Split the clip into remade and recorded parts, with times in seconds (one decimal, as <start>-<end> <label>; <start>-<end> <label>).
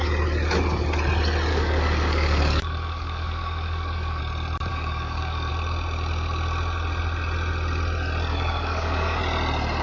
0.0-1.5 recorded; 1.5-4.2 remade; 4.2-4.7 recorded; 4.7-5.5 remade; 5.5-8.3 recorded; 8.3-9.2 remade; 9.2-9.8 recorded